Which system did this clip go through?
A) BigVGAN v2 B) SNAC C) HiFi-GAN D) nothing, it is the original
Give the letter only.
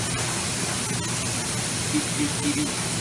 D